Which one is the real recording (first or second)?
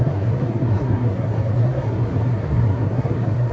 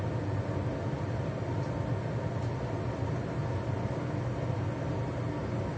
second